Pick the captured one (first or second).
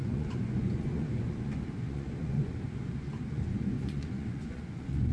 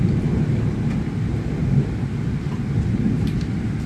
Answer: second